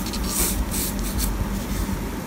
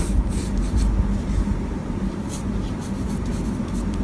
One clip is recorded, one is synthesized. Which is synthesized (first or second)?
second